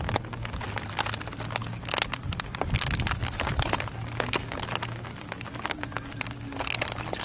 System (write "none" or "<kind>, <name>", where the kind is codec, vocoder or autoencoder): none